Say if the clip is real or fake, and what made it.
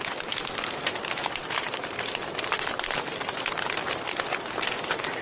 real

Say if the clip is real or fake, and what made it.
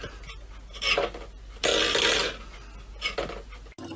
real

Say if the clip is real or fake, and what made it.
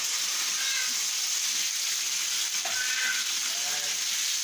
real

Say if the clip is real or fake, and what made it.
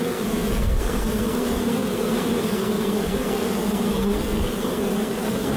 fake, codec, SNAC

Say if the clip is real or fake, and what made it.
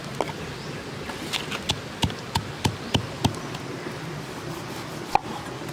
real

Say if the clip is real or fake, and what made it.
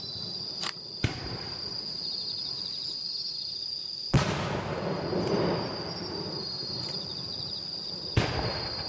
real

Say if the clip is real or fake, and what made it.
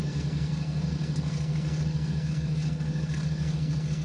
fake, codec, SNAC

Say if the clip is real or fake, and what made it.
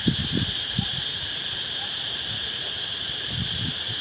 fake, vocoder, BigVGAN v2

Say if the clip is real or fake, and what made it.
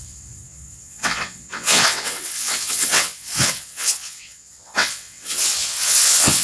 fake, vocoder, WaveNeXt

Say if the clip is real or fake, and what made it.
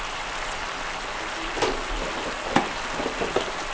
real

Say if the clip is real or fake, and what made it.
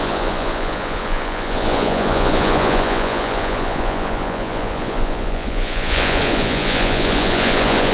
fake, vocoder, Vocos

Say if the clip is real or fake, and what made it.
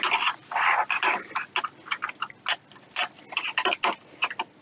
real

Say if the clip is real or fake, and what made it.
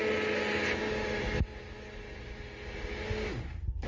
real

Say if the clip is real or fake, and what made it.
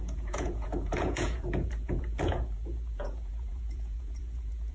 fake, vocoder, Vocos